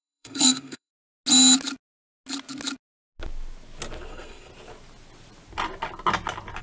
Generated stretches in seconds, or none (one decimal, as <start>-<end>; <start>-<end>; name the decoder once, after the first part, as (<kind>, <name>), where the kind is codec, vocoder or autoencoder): 0.0-0.9 (codec, SNAC); 4.1-4.5